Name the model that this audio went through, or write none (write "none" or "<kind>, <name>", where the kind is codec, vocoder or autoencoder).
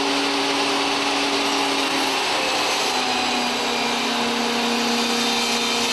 none